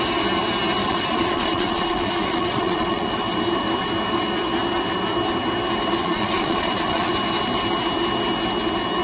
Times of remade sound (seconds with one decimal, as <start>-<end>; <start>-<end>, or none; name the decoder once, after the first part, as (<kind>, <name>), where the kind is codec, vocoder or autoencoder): 0.8-3.1 (vocoder, Vocos); 6.0-7.1